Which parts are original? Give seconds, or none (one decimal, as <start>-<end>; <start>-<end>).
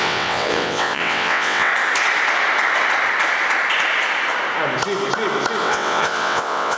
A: 1.7-5.6